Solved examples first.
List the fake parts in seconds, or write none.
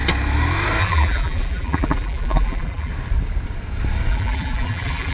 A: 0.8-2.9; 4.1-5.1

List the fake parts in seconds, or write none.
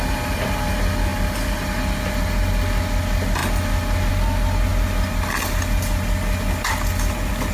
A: none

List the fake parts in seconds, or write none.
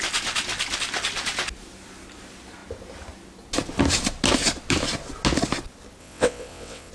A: 6.0-6.9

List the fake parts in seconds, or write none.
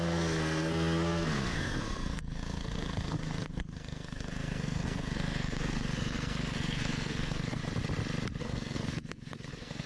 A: 0.0-7.6; 8.4-9.9